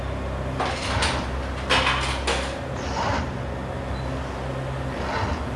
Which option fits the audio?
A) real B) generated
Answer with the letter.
A